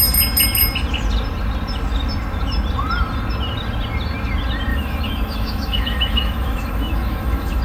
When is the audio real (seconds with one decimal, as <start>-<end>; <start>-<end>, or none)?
0.0-4.7